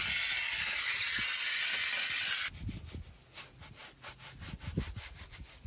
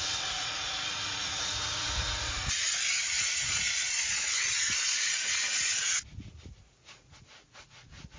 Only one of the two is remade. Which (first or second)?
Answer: second